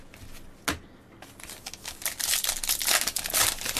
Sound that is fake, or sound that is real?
real